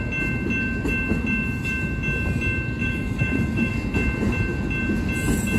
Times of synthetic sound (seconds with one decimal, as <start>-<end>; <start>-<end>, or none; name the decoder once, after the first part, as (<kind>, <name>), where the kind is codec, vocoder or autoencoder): 2.8-3.7 (autoencoder, DAC-VAE)